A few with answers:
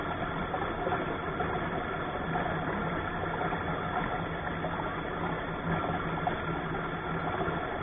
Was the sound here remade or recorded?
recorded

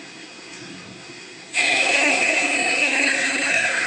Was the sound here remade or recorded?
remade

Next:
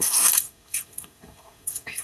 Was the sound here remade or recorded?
remade